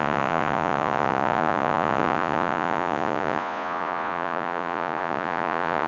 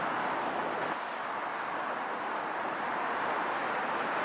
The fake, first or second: first